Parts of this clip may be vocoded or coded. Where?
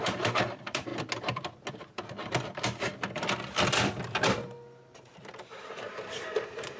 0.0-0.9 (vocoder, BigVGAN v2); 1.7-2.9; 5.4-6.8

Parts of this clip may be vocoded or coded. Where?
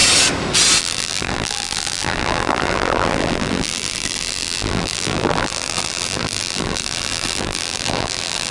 0.8-8.5 (vocoder, BigVGAN v2)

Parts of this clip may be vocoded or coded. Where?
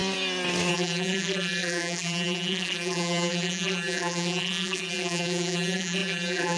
0.7-6.6 (vocoder, BigVGAN v2)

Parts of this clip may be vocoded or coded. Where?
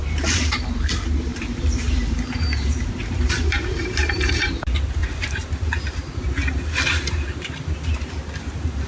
0.0-0.9 (vocoder, BigVGAN v2); 1.3-4.3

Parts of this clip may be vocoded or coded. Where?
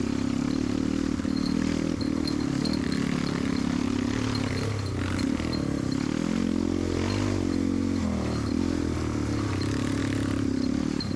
10.0-11.2 (vocoder, BigVGAN v2)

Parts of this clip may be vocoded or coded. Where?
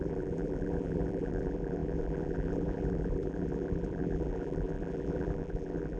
0.0-6.0 (vocoder, BigVGAN v2)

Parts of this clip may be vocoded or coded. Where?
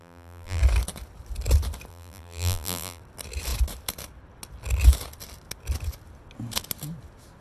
0.0-0.6 (vocoder, BigVGAN v2); 1.9-3.0